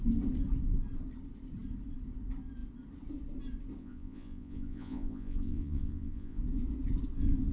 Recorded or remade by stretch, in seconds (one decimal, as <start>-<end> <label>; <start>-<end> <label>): 0.0-3.8 recorded; 3.8-6.4 remade; 6.4-7.5 recorded